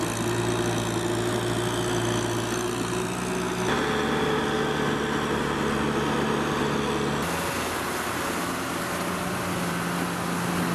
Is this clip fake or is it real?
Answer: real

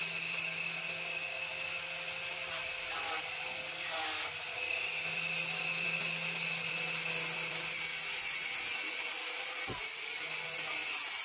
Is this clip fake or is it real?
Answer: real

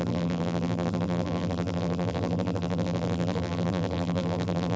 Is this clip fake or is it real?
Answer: fake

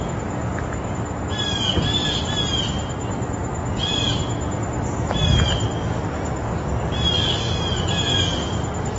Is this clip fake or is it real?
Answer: real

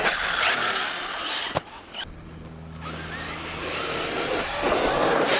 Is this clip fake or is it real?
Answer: real